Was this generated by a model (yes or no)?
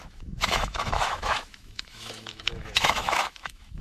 yes